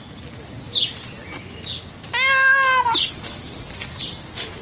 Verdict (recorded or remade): recorded